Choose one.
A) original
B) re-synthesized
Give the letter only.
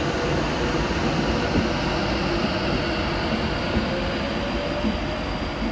A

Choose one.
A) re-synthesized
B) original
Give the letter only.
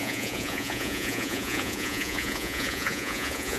A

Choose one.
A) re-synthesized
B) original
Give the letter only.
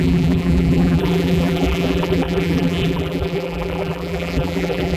A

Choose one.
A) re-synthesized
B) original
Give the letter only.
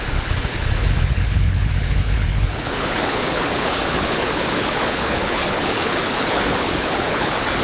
A